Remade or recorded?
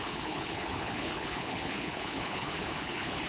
remade